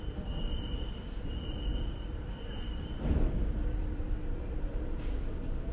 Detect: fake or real fake